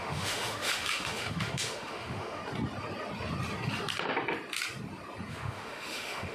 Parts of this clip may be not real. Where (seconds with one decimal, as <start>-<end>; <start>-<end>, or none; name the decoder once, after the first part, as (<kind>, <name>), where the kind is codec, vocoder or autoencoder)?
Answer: 0.0-2.4 (autoencoder, DAC-VAE); 5.3-6.3